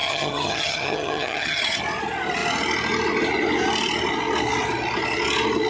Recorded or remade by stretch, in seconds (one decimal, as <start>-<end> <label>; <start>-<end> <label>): 0.0-1.8 remade; 1.8-5.7 recorded